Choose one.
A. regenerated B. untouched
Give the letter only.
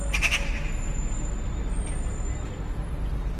B